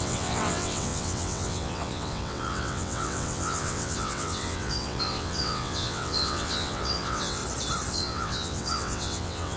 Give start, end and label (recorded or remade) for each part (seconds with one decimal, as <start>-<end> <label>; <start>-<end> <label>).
0.0-7.4 remade; 7.4-7.9 recorded; 7.9-9.6 remade